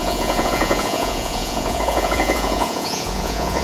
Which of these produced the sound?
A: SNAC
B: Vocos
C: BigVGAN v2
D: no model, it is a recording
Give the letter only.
B